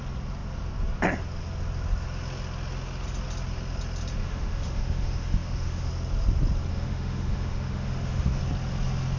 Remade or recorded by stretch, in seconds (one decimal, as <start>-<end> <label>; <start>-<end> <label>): 0.0-4.2 recorded; 4.2-5.9 remade; 5.9-6.7 recorded; 6.7-8.4 remade; 8.4-9.2 recorded